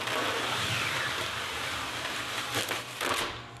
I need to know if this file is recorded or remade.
remade